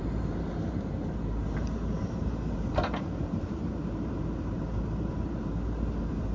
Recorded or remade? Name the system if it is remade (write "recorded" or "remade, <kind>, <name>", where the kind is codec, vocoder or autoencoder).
remade, vocoder, BigVGAN v2